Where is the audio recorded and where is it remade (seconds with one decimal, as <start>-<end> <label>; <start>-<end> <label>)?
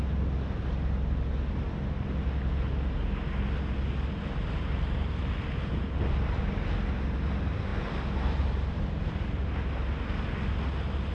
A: 0.0-11.1 recorded